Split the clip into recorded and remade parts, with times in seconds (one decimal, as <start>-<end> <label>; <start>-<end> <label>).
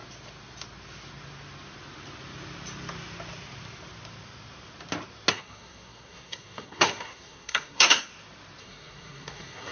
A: 0.0-5.3 recorded; 5.3-8.1 remade; 8.1-8.6 recorded; 8.6-9.7 remade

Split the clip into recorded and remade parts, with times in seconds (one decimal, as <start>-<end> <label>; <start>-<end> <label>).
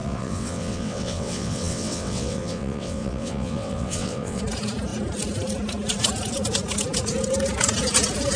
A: 0.0-4.4 remade; 4.4-8.4 recorded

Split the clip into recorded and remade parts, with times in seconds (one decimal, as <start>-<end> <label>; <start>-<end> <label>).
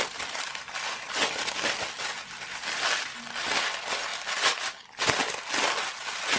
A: 0.0-6.4 recorded